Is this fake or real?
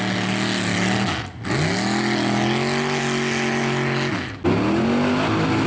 real